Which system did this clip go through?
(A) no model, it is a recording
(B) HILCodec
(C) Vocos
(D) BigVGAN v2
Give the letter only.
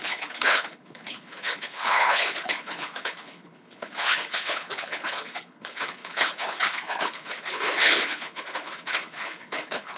B